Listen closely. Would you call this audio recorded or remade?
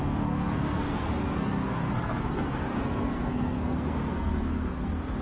remade